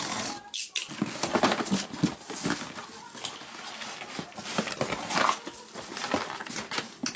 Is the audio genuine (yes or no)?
yes